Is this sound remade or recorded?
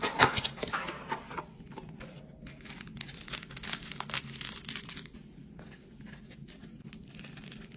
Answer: recorded